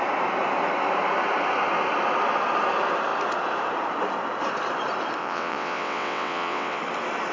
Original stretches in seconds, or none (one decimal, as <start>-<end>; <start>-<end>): 0.0-5.2; 6.8-7.3